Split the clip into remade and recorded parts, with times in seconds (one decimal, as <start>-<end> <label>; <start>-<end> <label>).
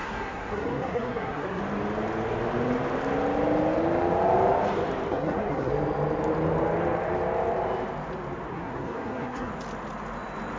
0.0-1.6 remade; 1.6-5.1 recorded; 5.1-5.7 remade; 5.7-8.5 recorded; 8.5-9.5 remade; 9.5-10.6 recorded